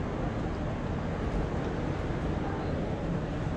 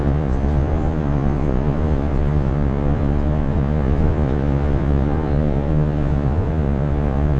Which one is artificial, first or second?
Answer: second